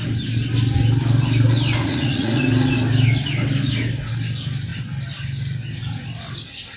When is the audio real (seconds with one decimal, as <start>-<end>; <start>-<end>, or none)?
0.0-1.8; 2.4-6.8